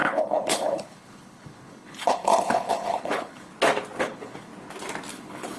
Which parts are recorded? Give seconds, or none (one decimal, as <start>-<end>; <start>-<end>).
3.5-4.0; 4.5-5.1